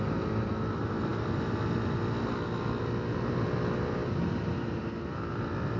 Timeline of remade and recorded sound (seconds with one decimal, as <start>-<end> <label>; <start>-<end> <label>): 0.0-5.8 recorded